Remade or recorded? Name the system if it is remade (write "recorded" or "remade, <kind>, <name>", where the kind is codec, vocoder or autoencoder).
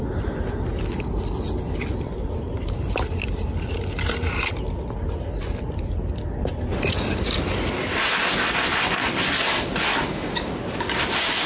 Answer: recorded